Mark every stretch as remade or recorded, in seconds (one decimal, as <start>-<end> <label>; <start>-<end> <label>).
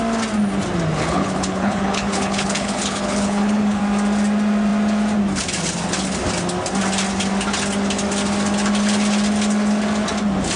0.0-0.9 recorded; 0.9-3.8 remade; 3.8-10.6 recorded